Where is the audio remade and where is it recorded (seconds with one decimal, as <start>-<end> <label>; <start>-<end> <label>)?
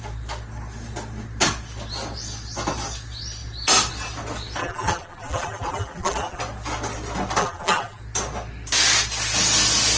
0.0-4.6 recorded; 4.6-6.4 remade; 6.4-7.4 recorded; 7.4-8.0 remade; 8.0-10.0 recorded